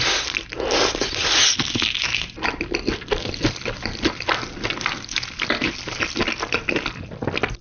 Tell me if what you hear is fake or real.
real